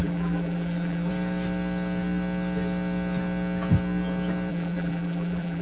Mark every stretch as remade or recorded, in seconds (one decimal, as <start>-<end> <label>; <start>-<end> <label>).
0.0-1.1 remade; 1.1-4.5 recorded; 4.5-5.6 remade